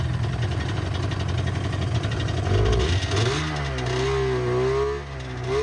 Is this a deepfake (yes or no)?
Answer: no